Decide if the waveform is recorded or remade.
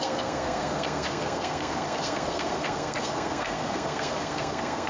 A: remade